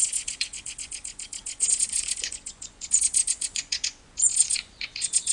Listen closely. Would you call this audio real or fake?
fake